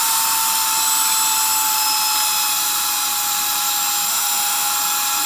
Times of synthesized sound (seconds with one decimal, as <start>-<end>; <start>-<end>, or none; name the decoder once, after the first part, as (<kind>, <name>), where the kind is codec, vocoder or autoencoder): 4.1-4.7 (autoencoder, DAC-VAE)